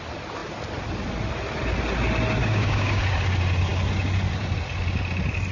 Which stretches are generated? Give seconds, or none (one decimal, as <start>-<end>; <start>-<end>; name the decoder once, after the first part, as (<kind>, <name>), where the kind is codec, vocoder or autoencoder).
2.4-3.0 (codec, DAC)